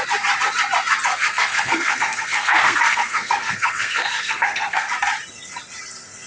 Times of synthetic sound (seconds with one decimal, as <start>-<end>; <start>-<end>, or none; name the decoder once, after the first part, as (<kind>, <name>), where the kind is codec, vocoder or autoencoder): 1.1-4.9 (codec, SNAC)